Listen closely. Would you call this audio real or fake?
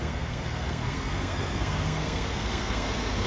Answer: fake